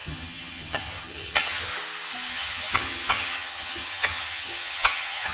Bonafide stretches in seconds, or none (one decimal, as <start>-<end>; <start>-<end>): 1.7-2.3